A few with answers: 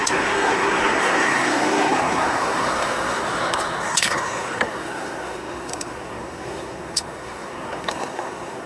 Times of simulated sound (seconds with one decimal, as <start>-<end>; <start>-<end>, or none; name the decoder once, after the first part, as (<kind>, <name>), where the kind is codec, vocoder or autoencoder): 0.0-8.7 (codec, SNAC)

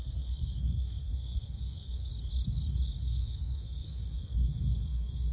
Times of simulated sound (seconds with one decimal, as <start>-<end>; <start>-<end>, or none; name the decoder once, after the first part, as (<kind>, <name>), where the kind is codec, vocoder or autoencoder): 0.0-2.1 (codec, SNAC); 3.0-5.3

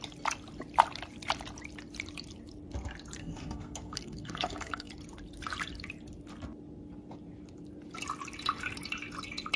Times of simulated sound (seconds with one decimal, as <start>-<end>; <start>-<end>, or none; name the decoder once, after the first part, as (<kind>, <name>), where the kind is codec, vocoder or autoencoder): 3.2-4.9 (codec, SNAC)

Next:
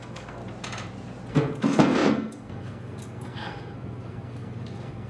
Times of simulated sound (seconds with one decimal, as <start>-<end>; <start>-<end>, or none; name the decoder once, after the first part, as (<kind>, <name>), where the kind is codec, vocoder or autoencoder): 0.0-0.4 (codec, SNAC); 1.3-5.1

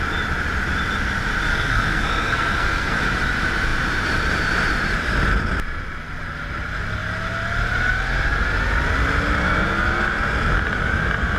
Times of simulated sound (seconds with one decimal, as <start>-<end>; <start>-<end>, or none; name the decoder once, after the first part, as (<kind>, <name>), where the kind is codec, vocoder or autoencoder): 1.5-3.0 (codec, SNAC)

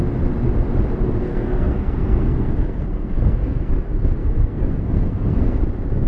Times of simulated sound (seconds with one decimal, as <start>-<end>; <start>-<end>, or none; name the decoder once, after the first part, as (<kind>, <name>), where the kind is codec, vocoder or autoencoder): 1.2-3.7 (codec, SNAC); 4.2-5.6

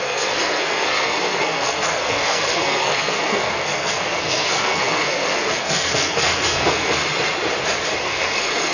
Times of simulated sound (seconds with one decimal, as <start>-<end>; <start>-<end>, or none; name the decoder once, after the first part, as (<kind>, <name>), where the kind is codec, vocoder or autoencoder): 0.0-7.0 (codec, SNAC); 8.0-8.7